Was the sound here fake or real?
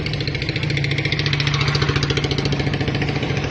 real